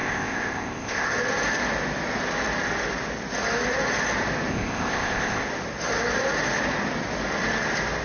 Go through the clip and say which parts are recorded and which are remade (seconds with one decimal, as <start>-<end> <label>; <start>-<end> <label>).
0.0-1.1 remade; 1.1-4.5 recorded; 4.5-5.4 remade; 5.4-8.0 recorded